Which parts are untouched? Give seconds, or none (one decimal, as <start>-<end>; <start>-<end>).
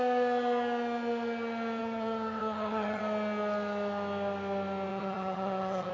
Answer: 0.0-1.8; 3.0-4.9